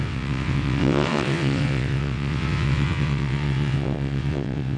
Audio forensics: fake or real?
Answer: fake